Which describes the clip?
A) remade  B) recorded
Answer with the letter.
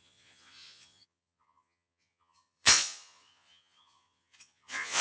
A